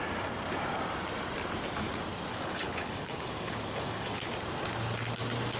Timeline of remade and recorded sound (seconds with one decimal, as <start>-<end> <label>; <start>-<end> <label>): 0.0-2.3 recorded; 2.3-4.3 remade; 4.3-5.6 recorded